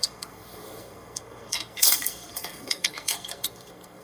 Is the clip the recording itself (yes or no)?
no